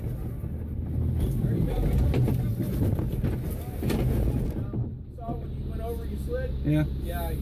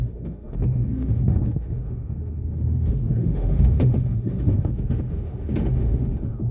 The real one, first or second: first